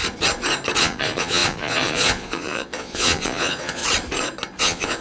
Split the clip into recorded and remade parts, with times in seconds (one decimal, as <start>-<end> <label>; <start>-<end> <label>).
0.0-0.8 recorded; 0.8-3.8 remade; 3.8-4.6 recorded; 4.6-5.0 remade